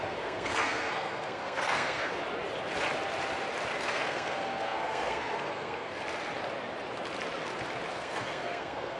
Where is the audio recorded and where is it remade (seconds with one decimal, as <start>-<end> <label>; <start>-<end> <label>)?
0.0-2.1 remade; 2.1-3.8 recorded; 3.8-6.0 remade; 6.0-7.9 recorded; 7.9-9.0 remade